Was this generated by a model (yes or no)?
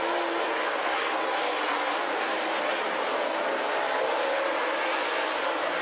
no